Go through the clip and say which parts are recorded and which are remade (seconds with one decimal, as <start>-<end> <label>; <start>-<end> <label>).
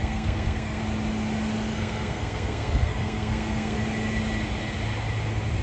0.0-0.8 remade; 0.8-1.7 recorded; 1.7-3.8 remade; 3.8-5.6 recorded